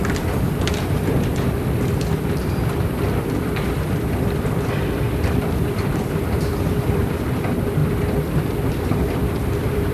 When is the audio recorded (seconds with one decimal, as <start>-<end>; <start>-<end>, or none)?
7.8-8.7